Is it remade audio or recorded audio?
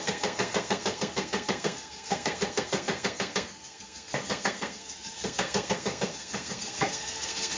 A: remade